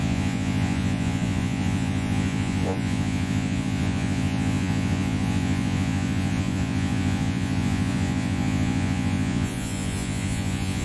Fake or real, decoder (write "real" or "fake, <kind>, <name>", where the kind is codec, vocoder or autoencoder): fake, vocoder, Vocos